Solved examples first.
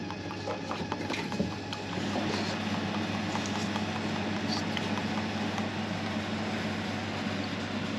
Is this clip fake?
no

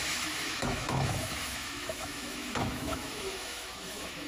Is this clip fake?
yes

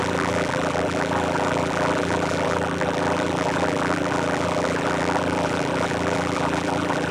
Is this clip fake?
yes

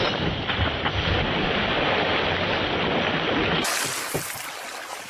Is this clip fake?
no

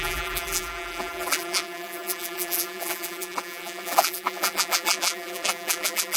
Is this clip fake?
yes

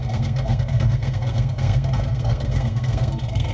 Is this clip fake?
yes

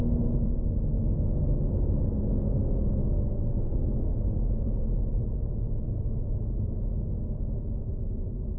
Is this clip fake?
no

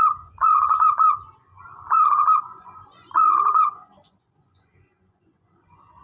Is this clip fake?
yes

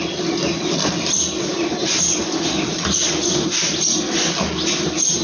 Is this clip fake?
no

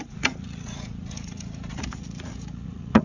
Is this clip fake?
yes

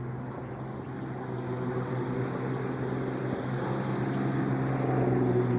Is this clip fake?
no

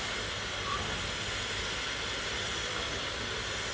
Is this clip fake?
no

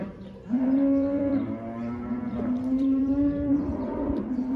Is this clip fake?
yes